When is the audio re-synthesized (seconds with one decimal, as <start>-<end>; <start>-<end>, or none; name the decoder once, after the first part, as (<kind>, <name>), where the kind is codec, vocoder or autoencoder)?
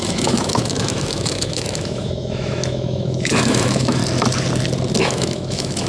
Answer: 0.0-4.0 (autoencoder, DAC-VAE); 5.0-5.9